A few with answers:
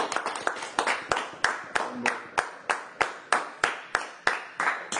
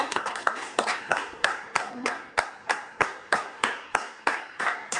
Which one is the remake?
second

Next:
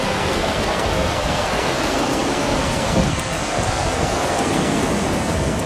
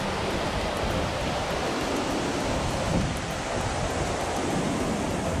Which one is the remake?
first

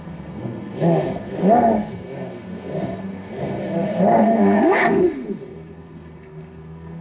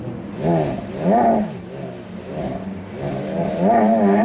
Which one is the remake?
first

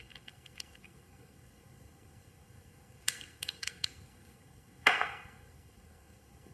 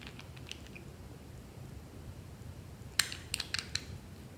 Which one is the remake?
first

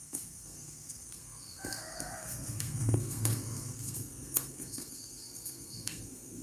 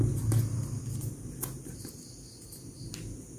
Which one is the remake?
first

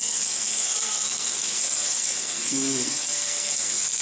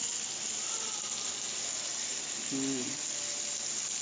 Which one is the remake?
first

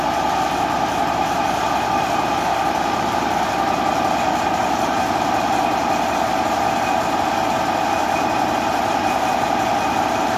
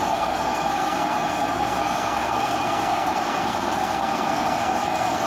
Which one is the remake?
second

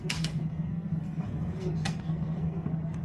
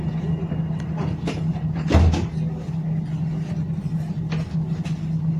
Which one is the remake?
first